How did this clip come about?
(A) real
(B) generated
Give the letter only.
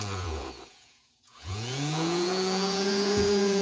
B